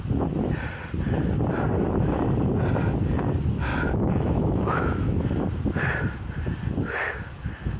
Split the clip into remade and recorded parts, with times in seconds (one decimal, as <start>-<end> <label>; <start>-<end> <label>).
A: 0.0-3.7 recorded; 3.7-5.2 remade; 5.2-7.8 recorded